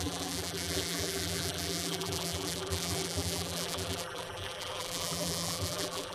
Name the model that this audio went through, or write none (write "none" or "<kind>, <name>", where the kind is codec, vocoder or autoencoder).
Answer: vocoder, BigVGAN v2